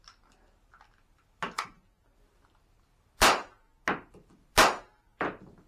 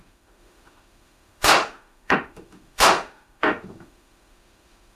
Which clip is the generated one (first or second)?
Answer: second